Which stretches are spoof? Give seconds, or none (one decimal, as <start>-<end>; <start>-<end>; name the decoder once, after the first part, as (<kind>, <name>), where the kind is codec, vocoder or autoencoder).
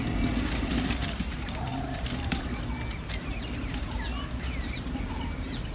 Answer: none